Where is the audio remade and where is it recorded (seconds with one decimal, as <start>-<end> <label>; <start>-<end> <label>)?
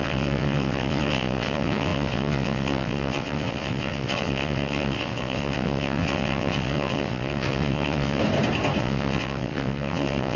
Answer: 0.0-8.2 remade; 8.2-8.8 recorded; 8.8-10.4 remade